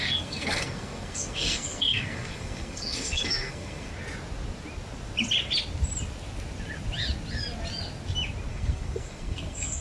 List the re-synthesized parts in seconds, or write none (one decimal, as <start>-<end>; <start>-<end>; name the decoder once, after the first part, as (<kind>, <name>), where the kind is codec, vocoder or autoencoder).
0.0-3.9 (codec, SNAC); 8.5-9.8